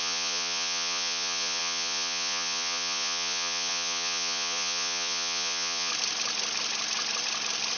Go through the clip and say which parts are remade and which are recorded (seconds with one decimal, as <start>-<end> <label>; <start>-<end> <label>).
0.0-5.9 remade; 5.9-7.8 recorded